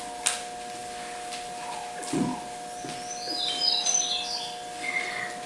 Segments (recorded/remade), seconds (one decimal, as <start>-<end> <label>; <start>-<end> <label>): 0.0-5.5 recorded